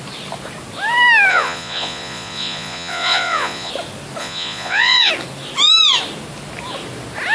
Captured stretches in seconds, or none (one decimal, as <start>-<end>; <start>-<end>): 0.0-1.3; 3.7-4.2; 5.1-7.3